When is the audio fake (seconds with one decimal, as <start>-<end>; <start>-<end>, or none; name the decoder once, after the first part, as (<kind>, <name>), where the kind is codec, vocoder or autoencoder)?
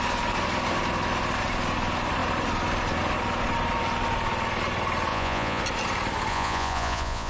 5.1-5.6 (vocoder, Vocos); 6.3-7.3